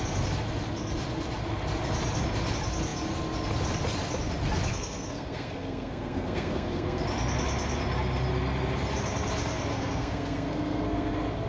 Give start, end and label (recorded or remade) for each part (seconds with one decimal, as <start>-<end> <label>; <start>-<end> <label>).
0.0-4.7 recorded; 4.7-7.0 remade; 7.0-9.7 recorded; 9.7-11.1 remade; 11.1-11.5 recorded